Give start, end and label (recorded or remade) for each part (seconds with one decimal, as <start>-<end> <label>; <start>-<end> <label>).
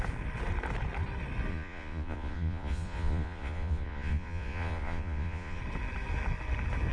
0.0-1.5 recorded; 1.5-5.6 remade; 5.6-6.9 recorded